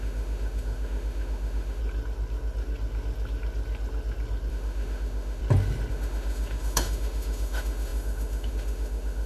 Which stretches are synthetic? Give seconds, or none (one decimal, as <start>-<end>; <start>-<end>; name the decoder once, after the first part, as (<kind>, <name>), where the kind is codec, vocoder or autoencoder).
0.0-1.8 (autoencoder, DAC-VAE); 4.5-5.4; 5.9-9.3